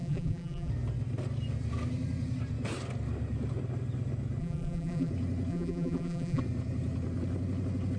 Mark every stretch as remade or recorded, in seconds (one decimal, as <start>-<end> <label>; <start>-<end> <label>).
0.0-0.7 remade; 0.7-4.4 recorded; 4.4-5.1 remade; 5.1-5.5 recorded; 5.5-6.4 remade; 6.4-8.0 recorded